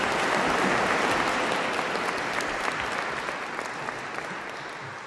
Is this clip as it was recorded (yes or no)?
yes